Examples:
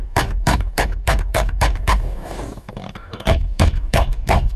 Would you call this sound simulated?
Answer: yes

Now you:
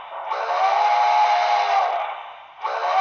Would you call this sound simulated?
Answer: no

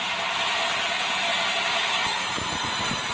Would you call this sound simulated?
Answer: no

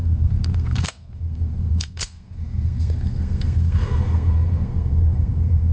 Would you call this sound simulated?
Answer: yes